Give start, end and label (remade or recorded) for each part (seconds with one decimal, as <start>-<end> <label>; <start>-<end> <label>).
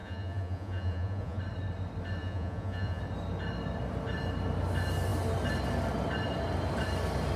0.0-1.4 remade; 1.4-2.2 recorded; 2.2-3.0 remade; 3.0-7.4 recorded